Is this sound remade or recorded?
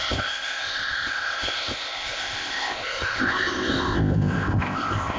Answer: remade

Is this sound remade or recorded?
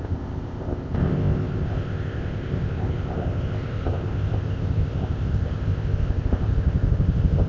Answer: remade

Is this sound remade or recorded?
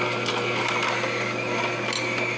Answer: recorded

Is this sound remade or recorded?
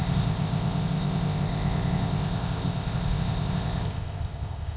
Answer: remade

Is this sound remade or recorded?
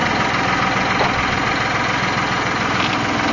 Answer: recorded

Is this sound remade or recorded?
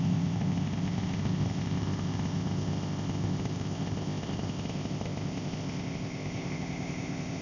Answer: remade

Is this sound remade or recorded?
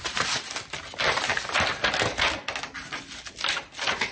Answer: recorded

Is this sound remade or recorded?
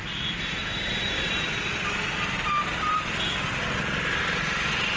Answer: recorded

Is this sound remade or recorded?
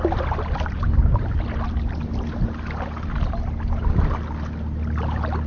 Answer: recorded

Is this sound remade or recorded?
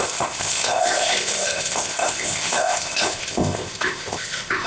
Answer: remade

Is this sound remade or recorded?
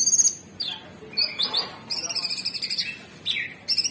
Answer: recorded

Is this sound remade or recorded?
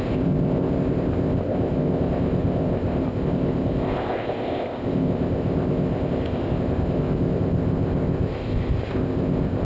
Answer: remade